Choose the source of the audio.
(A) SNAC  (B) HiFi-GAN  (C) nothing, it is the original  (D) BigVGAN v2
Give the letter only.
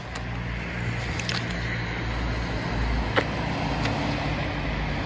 C